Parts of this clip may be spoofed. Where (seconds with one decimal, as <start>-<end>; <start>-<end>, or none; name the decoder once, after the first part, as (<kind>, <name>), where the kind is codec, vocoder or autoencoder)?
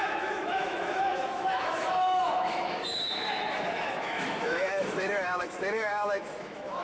0.0-6.8 (autoencoder, DAC-VAE)